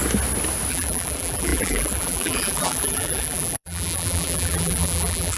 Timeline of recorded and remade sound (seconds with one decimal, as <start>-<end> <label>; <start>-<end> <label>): 0.0-0.7 recorded; 0.7-5.4 remade